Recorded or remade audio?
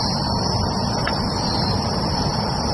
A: recorded